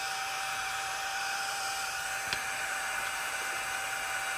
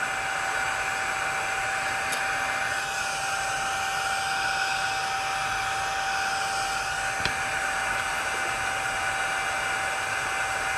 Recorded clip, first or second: second